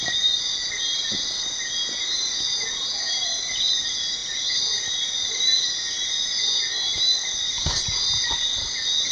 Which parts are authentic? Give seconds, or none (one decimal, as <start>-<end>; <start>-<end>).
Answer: 0.0-9.1